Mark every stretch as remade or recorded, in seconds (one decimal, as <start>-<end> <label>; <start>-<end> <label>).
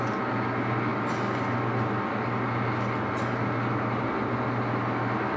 0.0-5.4 recorded